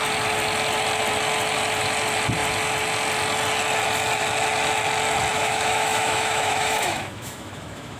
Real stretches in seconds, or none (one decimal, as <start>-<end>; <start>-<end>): 0.0-5.3

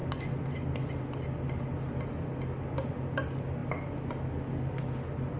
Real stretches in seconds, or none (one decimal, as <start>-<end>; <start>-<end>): 0.0-5.4

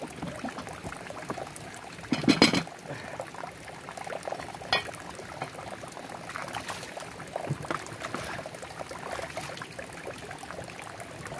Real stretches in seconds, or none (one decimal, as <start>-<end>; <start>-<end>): 0.0-0.8; 2.2-11.4

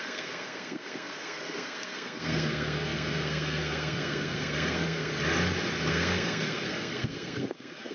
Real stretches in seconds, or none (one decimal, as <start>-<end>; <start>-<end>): 5.1-5.9

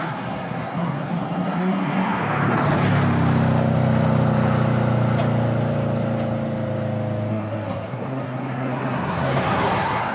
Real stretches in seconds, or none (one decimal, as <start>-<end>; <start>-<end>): 2.2-7.3

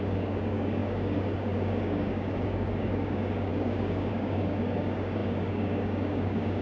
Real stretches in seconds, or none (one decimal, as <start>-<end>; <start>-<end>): none

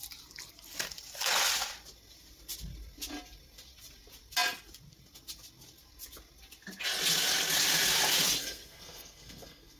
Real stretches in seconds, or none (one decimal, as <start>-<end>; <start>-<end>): 0.0-8.4